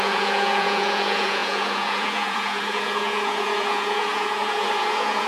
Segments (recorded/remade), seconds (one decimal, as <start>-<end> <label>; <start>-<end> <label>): 0.0-5.3 remade

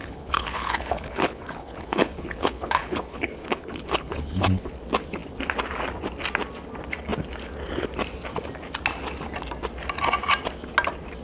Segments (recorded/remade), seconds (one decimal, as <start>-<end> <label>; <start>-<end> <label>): 0.0-4.7 remade; 4.7-11.2 recorded

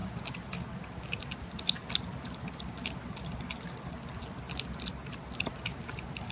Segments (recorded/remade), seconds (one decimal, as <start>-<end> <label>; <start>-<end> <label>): 0.0-6.3 recorded

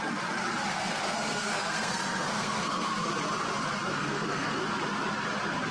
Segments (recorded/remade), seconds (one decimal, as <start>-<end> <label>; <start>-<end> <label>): 0.0-0.7 recorded; 0.7-2.9 remade; 2.9-3.9 recorded; 3.9-4.6 remade; 4.6-5.7 recorded